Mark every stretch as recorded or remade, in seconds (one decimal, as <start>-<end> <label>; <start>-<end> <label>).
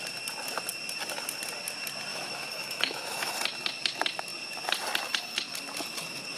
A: 0.0-2.1 recorded; 2.1-3.3 remade; 3.3-6.4 recorded